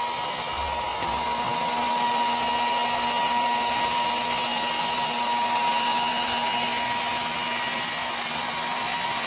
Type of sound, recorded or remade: recorded